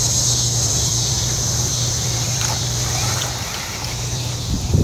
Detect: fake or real fake